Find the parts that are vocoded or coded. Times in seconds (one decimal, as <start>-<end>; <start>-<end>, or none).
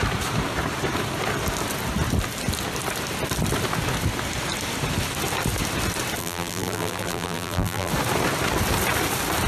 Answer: 6.2-7.9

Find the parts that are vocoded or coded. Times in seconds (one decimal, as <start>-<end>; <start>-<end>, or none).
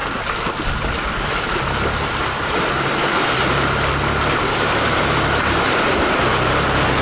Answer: none